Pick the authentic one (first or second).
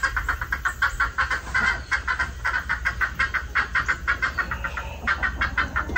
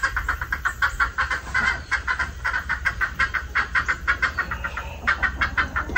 first